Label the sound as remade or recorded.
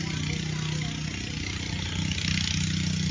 recorded